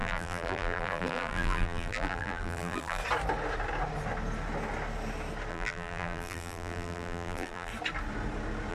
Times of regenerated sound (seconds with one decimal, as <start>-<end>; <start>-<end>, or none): 0.0-3.0; 5.5-7.7